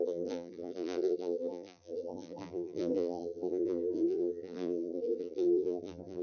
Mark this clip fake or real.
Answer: fake